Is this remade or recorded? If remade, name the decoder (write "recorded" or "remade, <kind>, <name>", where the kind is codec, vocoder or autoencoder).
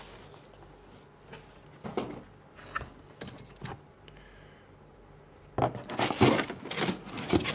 recorded